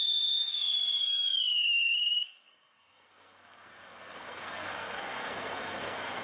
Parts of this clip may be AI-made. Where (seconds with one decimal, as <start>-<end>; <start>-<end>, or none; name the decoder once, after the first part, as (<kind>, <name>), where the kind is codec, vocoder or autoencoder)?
0.0-6.2 (codec, SNAC)

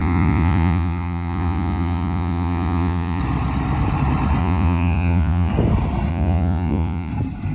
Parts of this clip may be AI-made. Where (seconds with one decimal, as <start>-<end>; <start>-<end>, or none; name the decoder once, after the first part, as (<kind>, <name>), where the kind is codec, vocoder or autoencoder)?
0.0-3.2 (vocoder, Vocos); 4.4-5.5; 6.1-7.1